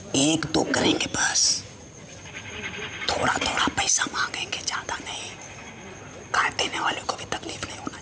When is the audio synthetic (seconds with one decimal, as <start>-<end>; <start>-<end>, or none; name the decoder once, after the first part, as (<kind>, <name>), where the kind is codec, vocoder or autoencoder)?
1.4-2.2 (vocoder, Vocos)